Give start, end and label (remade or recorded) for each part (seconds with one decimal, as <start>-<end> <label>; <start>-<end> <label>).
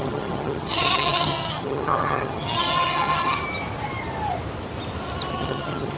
0.0-3.4 remade; 3.4-5.3 recorded; 5.3-6.0 remade